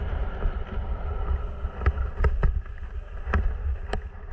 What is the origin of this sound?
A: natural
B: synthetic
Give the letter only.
A